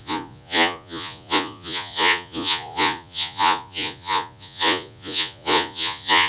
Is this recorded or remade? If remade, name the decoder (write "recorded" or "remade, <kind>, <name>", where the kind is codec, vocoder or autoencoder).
remade, vocoder, Vocos